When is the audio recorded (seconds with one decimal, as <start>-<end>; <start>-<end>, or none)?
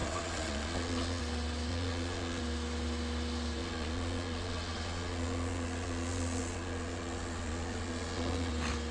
1.2-1.7; 2.4-3.6; 8.5-8.9